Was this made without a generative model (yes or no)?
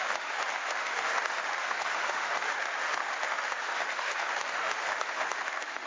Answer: no